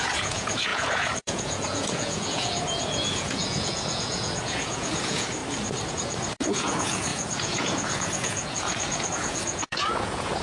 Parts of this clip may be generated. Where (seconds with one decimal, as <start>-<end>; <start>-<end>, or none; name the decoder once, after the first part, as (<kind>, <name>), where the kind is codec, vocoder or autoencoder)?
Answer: 0.0-5.4 (vocoder, Vocos); 5.9-10.4